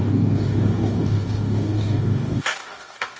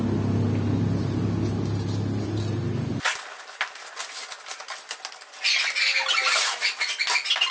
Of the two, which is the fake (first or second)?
first